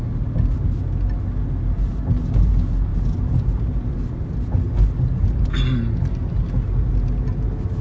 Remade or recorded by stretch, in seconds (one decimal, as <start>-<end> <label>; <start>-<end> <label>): 0.0-7.8 recorded